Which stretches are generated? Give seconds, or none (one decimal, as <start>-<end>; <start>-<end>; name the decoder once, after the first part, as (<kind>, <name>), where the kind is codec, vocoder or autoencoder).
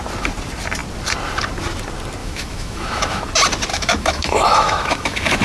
2.2-3.2 (autoencoder, DAC-VAE); 3.7-5.4